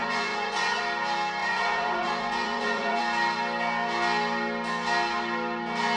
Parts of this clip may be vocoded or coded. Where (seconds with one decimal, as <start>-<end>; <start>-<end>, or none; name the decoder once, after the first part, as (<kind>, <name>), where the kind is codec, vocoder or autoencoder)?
0.0-0.8 (vocoder, Vocos); 1.4-3.0